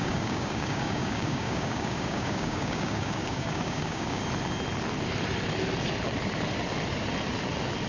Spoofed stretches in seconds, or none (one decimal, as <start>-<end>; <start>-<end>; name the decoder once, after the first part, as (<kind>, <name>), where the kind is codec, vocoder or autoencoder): 0.0-4.2 (codec, DAC)